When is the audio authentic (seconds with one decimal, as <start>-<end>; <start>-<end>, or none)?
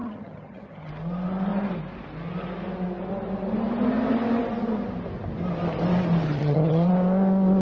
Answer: 0.9-6.4; 6.9-7.6